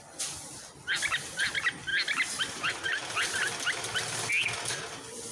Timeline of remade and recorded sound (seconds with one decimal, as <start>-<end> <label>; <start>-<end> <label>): 0.0-5.3 recorded